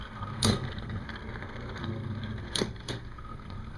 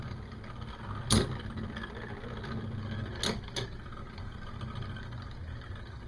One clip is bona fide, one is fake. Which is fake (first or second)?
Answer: first